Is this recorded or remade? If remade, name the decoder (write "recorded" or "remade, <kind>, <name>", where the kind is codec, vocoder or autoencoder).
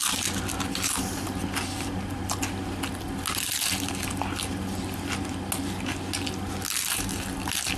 recorded